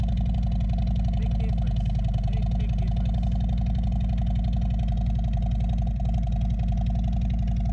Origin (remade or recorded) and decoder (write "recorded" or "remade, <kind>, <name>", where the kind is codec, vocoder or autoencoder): recorded